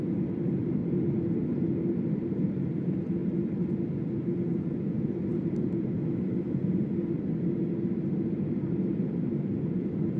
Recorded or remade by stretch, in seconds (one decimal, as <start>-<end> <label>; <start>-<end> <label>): 0.0-0.8 remade; 0.8-2.5 recorded; 2.5-3.2 remade; 3.2-4.6 recorded; 4.6-10.2 remade

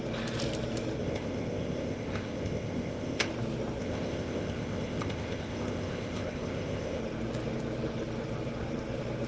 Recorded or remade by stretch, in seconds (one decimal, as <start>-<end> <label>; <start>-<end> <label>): 0.0-1.0 recorded; 1.0-3.3 remade; 3.3-3.8 recorded; 3.8-7.0 remade; 7.0-9.3 recorded

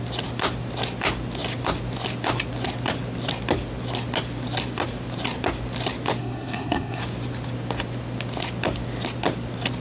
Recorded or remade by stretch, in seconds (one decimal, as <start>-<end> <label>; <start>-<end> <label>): 0.0-6.2 recorded; 6.2-7.0 remade; 7.0-9.8 recorded

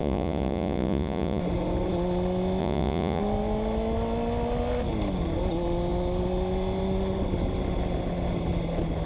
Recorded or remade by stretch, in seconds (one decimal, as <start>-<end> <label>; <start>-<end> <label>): 0.0-1.4 remade; 1.4-2.6 recorded; 2.6-3.2 remade; 3.2-9.1 recorded